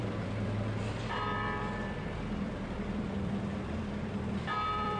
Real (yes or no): no